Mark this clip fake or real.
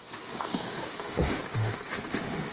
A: fake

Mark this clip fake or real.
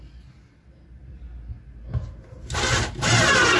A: real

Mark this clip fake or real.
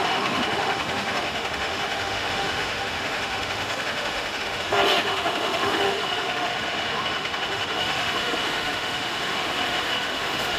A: fake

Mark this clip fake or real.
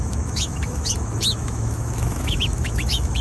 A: fake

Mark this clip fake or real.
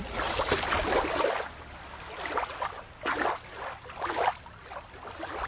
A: real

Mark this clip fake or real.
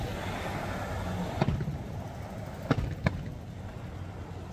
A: real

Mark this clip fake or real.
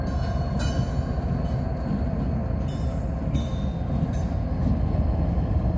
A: real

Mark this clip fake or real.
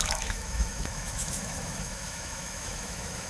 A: fake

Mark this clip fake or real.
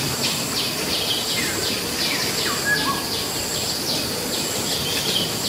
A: real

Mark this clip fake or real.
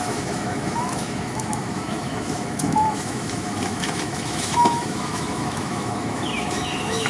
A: fake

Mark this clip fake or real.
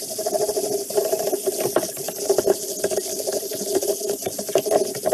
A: real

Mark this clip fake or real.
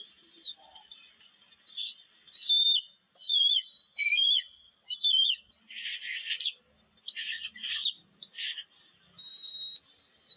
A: real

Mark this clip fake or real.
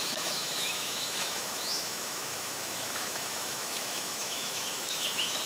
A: fake